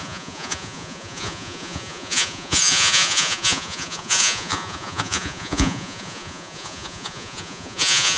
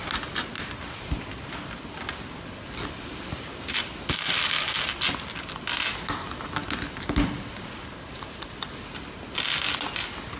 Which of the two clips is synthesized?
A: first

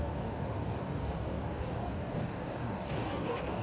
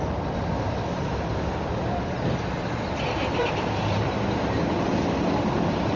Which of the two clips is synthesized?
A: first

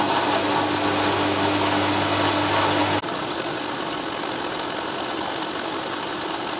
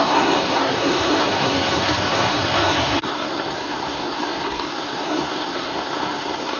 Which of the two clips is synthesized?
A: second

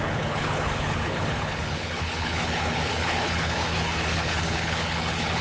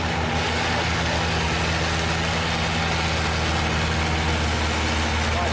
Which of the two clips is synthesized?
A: first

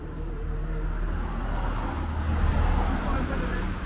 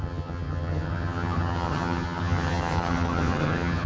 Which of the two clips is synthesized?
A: second